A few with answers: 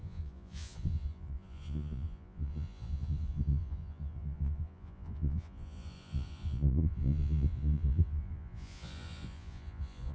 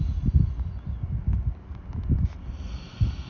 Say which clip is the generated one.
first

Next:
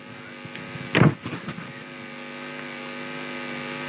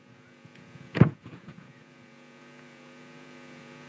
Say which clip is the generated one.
second